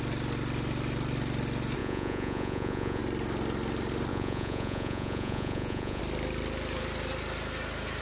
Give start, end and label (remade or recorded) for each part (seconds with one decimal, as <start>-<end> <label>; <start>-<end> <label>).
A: 0.0-1.8 recorded; 1.8-3.0 remade; 3.0-4.1 recorded; 4.1-6.0 remade; 6.0-8.0 recorded